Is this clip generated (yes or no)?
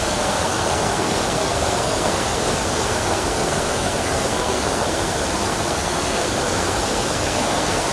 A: yes